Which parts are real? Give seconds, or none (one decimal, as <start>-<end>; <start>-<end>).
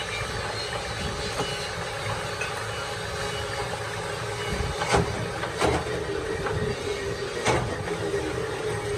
0.0-9.0